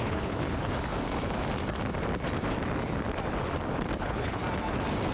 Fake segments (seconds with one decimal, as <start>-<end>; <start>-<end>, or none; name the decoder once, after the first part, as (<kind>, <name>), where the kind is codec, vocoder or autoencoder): 0.0-0.9 (codec, HILCodec); 4.0-4.4